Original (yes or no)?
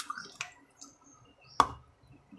yes